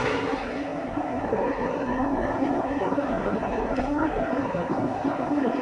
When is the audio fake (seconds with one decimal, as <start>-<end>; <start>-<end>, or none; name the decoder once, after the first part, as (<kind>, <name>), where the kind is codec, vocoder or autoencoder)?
0.0-5.6 (codec, SNAC)